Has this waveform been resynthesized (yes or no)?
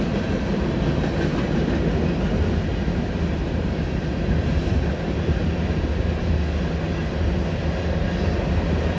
no